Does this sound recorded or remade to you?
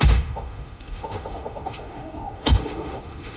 remade